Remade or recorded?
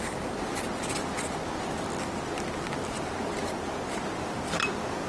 recorded